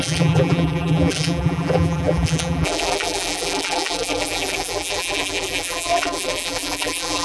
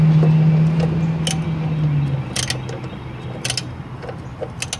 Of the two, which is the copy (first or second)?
first